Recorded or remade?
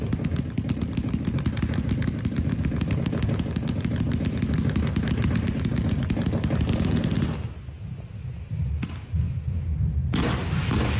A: recorded